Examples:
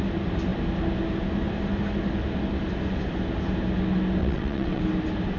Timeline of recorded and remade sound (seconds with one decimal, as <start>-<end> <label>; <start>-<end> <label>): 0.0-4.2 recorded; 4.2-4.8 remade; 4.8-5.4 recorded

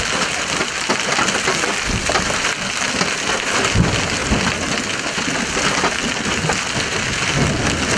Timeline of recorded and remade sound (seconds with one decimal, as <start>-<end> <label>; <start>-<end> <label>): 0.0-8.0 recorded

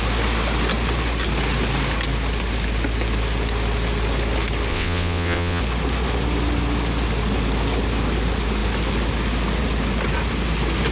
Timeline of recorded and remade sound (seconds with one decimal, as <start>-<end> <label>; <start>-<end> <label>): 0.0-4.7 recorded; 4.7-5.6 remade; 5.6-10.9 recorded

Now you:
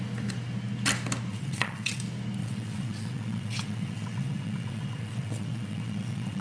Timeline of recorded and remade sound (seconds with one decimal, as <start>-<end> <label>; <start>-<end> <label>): 0.0-1.3 recorded; 1.3-2.0 remade; 2.0-2.4 recorded; 2.4-6.4 remade